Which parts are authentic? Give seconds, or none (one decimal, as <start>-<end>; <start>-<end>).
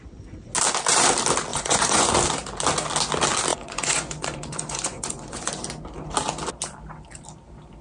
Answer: 0.0-1.5; 2.1-3.5; 5.5-7.8